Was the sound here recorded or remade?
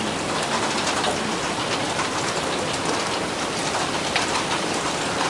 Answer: remade